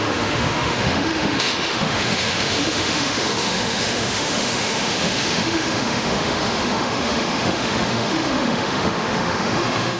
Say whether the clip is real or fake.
fake